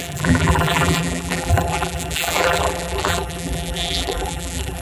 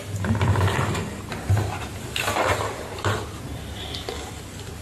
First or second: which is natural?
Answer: second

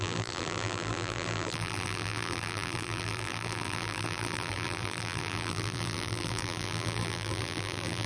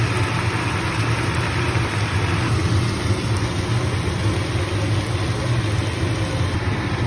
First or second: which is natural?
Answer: second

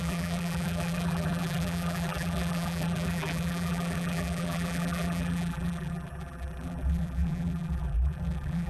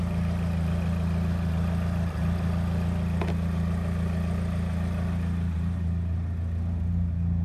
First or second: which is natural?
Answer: second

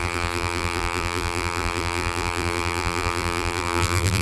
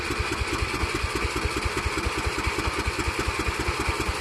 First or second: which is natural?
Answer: second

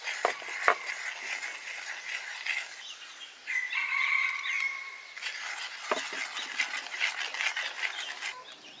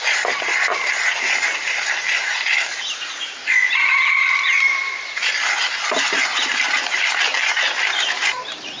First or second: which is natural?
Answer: first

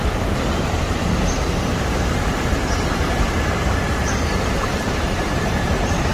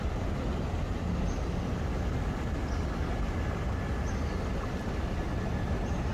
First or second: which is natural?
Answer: second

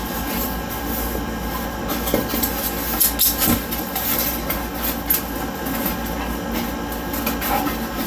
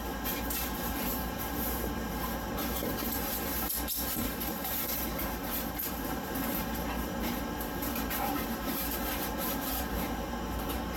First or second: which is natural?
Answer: first